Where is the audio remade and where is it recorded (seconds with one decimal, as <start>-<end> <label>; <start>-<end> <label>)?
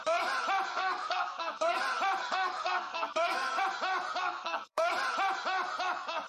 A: 0.0-0.7 recorded; 0.7-1.8 remade; 1.8-2.2 recorded; 2.2-3.6 remade; 3.6-4.2 recorded; 4.2-4.9 remade; 4.9-6.3 recorded